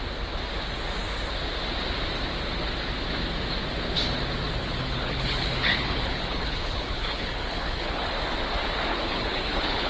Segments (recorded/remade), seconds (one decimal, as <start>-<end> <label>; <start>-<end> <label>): 0.0-4.6 recorded; 4.6-8.1 remade; 8.1-8.9 recorded; 8.9-9.9 remade